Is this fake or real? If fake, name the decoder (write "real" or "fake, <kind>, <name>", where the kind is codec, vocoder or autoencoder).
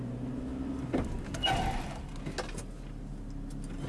real